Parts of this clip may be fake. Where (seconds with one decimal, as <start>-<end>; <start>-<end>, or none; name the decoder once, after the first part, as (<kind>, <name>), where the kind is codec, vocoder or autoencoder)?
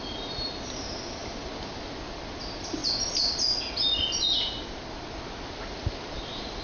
none